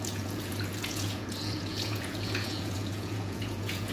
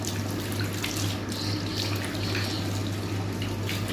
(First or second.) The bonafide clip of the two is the second